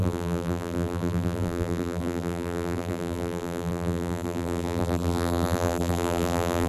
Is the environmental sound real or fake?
fake